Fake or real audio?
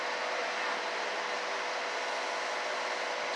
real